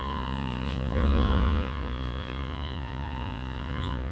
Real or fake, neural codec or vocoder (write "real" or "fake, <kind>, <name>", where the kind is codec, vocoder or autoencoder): fake, vocoder, Vocos